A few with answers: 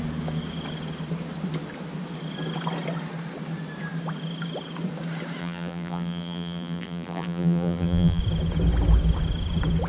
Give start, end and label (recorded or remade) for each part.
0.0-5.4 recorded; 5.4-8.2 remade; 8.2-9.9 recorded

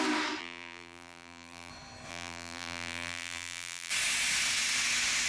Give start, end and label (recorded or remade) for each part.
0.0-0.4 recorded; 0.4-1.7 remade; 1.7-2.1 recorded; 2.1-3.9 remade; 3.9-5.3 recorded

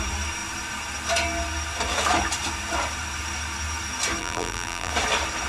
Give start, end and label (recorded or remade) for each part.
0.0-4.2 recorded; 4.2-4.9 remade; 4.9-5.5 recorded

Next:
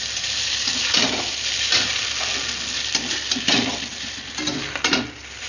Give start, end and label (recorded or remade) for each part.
0.0-1.9 remade; 1.9-3.4 recorded; 3.4-5.5 remade

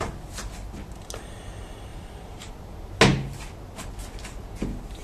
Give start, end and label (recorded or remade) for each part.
0.0-1.9 recorded; 1.9-2.5 remade; 2.5-5.0 recorded

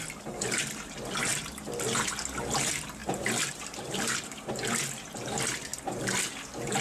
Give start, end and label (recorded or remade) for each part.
0.0-3.0 recorded; 3.0-4.5 remade; 4.5-6.8 recorded

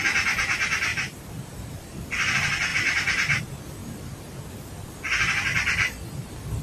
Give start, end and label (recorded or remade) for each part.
0.0-0.9 recorded; 0.9-2.0 remade; 2.0-2.7 recorded; 2.7-3.4 remade; 3.4-6.6 recorded